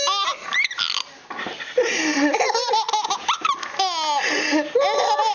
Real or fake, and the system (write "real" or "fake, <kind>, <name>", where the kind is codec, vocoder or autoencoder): real